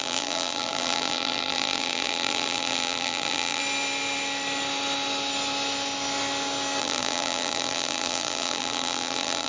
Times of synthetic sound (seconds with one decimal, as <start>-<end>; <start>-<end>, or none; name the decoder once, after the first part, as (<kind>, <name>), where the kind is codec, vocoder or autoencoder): 0.0-3.6 (vocoder, BigVGAN v2); 6.8-9.5